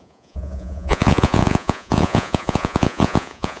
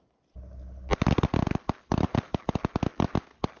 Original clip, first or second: second